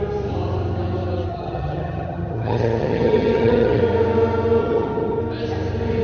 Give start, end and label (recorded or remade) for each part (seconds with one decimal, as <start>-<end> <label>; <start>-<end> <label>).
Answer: 0.0-1.3 recorded; 1.3-3.8 remade; 3.8-4.6 recorded; 4.6-5.2 remade; 5.2-6.0 recorded